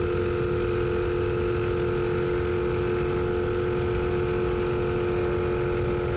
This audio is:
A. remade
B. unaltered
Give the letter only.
B